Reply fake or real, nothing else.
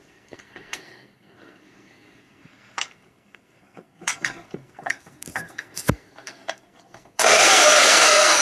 fake